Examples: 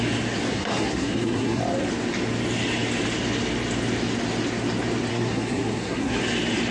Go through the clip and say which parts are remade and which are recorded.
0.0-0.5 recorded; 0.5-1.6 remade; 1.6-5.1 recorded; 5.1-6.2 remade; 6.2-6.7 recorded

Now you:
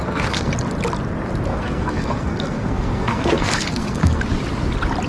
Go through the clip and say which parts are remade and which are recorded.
0.0-0.5 remade; 0.5-1.5 recorded; 1.5-4.2 remade; 4.2-5.1 recorded